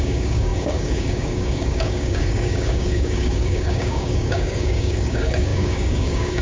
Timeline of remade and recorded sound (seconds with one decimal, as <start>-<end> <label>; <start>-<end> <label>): 0.0-6.4 remade